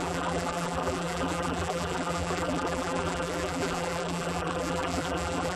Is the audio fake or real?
fake